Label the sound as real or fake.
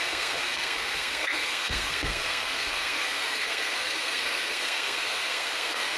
fake